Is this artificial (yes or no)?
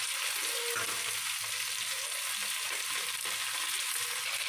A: no